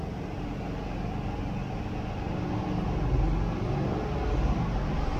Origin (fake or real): real